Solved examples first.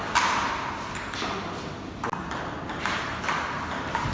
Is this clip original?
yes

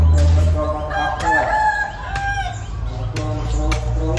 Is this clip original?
yes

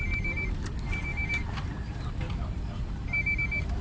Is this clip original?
yes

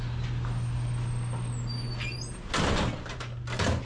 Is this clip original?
yes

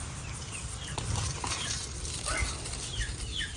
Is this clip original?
yes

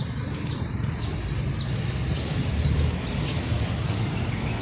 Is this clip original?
yes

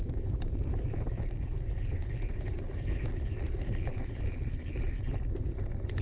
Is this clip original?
no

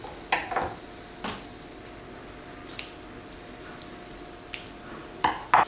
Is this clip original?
yes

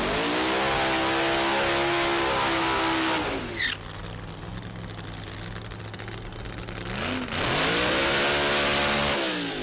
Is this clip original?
yes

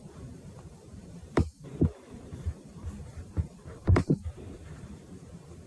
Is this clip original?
no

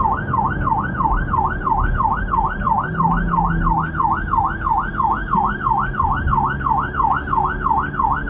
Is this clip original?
yes